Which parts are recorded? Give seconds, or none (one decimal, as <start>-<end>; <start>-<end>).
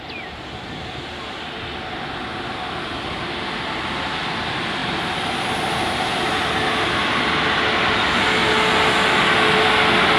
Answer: 0.0-10.2